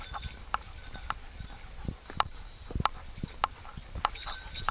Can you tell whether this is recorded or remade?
recorded